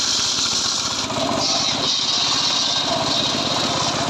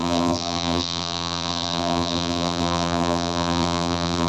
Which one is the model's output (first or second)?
second